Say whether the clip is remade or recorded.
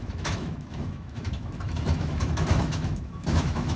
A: remade